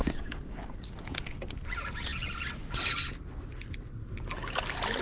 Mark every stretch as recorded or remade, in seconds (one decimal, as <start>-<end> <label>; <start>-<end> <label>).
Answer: 0.0-0.9 remade; 0.9-5.0 recorded